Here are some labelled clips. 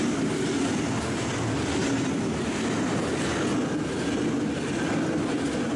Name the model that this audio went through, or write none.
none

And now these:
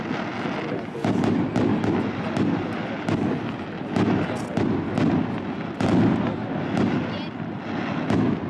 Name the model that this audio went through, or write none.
none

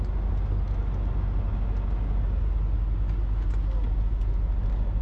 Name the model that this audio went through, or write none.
none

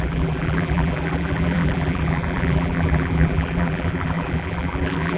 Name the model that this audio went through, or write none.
vocoder, BigVGAN v2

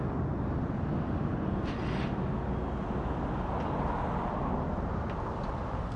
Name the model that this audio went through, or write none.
none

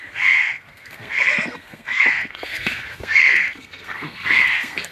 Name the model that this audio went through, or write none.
codec, SNAC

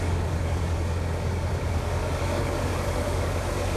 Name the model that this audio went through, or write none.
codec, DAC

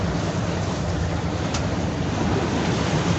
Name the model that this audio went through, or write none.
vocoder, BigVGAN v2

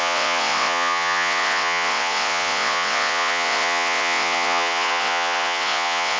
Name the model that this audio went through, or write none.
vocoder, WaveNeXt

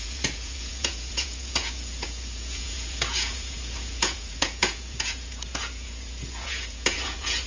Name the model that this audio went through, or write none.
vocoder, Vocos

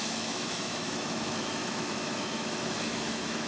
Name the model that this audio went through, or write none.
autoencoder, DAC-VAE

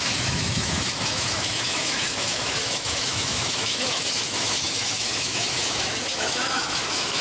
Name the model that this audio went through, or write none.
autoencoder, DAC-VAE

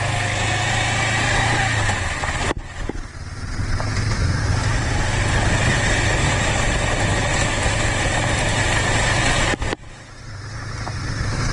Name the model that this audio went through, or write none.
none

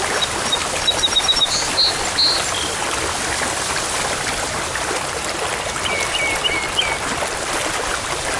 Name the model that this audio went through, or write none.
none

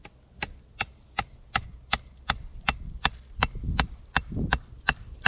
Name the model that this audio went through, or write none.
none